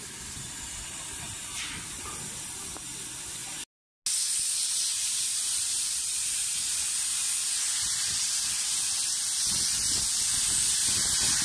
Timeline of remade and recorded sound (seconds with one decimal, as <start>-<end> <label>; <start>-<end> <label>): 0.0-5.0 recorded; 5.0-6.6 remade; 6.6-11.4 recorded